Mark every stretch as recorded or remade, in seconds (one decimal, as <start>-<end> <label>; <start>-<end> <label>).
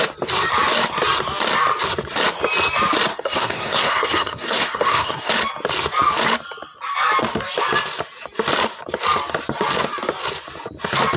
0.0-3.1 recorded; 3.1-5.3 remade; 5.3-11.2 recorded